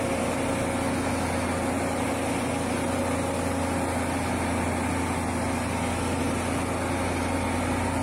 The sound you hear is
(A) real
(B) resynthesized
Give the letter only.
A